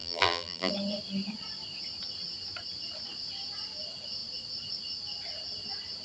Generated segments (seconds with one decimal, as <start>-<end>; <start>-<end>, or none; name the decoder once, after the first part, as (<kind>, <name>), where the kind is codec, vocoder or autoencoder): 0.0-0.7 (vocoder, BigVGAN v2)